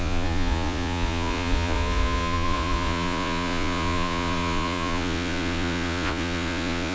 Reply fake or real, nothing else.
fake